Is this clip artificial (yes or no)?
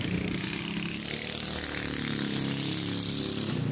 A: no